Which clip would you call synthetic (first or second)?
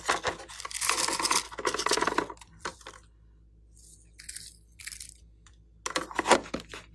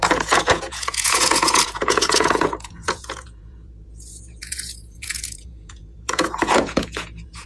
second